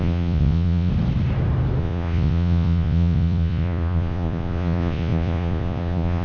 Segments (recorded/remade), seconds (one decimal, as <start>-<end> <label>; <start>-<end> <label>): 0.0-0.9 remade; 0.9-1.8 recorded; 1.8-6.2 remade